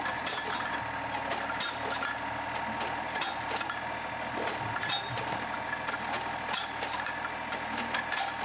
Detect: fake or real real